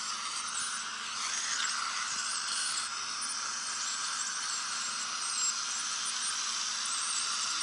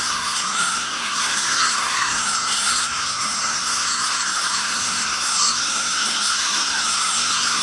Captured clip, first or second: first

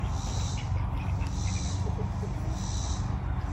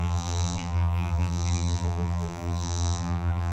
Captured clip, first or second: first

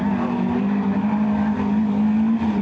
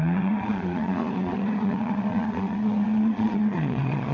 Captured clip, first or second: first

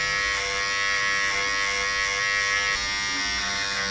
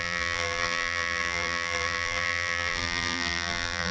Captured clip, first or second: first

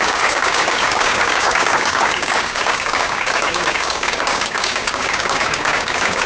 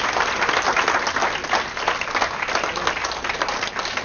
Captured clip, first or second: second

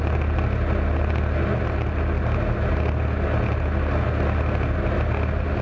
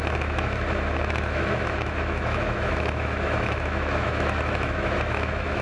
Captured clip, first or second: first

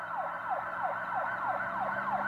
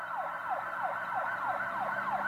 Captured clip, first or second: first